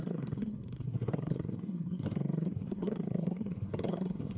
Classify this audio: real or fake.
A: fake